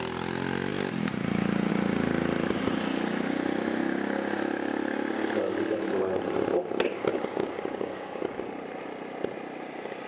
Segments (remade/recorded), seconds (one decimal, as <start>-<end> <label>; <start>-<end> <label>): 0.0-7.1 recorded; 7.1-8.4 remade; 8.4-10.1 recorded